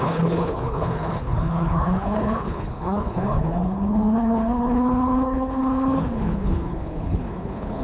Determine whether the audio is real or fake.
fake